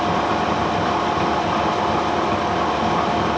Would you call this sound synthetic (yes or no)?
no